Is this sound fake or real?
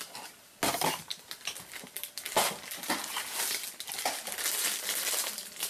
real